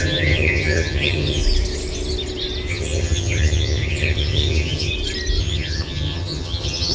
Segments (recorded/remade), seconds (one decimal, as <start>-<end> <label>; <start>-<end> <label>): 0.0-1.4 remade; 1.4-2.7 recorded; 2.7-4.9 remade; 4.9-5.4 recorded; 5.4-6.9 remade